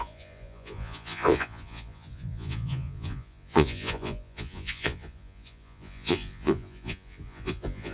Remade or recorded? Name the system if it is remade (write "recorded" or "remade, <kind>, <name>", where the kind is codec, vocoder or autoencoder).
remade, vocoder, Vocos